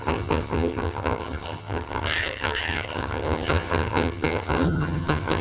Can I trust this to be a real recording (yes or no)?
no